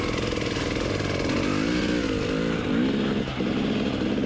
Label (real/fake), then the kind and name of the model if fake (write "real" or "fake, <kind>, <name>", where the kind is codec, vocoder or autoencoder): real